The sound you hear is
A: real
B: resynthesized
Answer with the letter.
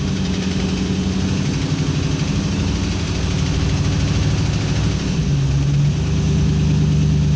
A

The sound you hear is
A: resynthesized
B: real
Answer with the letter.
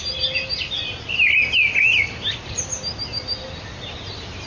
B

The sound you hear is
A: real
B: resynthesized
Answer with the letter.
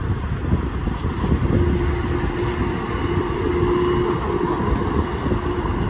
A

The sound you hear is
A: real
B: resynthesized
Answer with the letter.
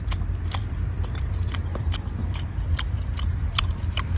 B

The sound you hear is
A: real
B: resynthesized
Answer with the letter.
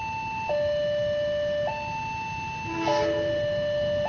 A